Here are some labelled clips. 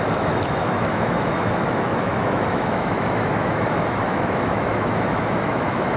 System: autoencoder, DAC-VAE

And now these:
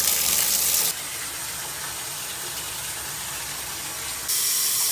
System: none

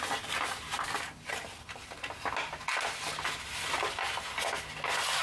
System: none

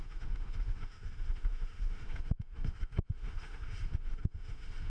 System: autoencoder, DAC-VAE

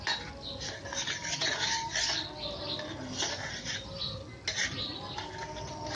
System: none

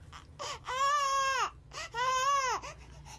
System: none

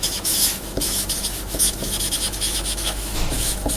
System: autoencoder, DAC-VAE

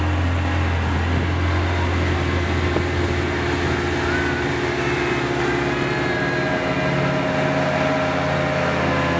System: none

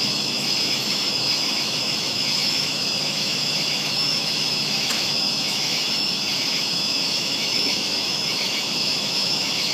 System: autoencoder, DAC-VAE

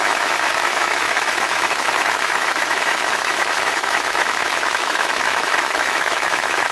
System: autoencoder, DAC-VAE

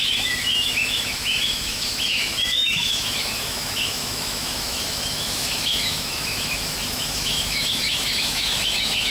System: autoencoder, DAC-VAE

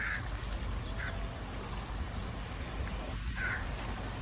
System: none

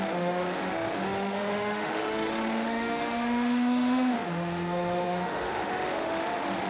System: autoencoder, DAC-VAE